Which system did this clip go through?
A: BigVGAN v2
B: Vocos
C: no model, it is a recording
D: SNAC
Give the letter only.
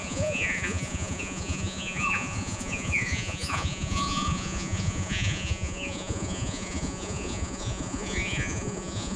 B